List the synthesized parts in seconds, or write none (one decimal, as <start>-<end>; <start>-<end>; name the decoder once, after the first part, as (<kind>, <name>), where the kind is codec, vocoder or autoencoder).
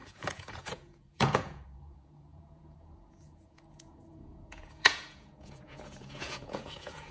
0.0-7.1 (vocoder, Vocos)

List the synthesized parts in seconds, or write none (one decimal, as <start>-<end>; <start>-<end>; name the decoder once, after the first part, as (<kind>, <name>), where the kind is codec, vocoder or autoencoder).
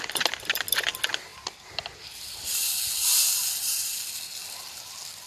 none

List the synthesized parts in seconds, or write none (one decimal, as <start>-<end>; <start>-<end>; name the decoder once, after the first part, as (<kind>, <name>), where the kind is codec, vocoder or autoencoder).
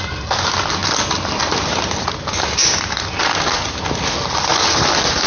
none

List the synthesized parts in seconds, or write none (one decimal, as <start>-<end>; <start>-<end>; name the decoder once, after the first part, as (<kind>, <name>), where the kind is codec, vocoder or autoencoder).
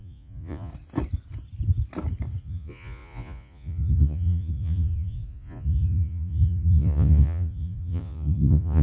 0.0-0.7 (vocoder, Vocos); 2.4-8.8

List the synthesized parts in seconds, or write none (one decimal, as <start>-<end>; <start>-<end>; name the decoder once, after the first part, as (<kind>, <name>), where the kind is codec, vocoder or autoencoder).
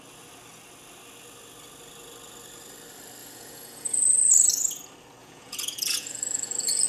3.2-4.8 (vocoder, Vocos); 5.2-6.9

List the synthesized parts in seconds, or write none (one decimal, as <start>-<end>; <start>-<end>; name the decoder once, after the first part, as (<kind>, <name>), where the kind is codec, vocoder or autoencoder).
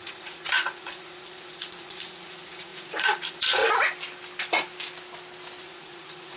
0.0-3.6 (vocoder, Vocos); 5.6-6.4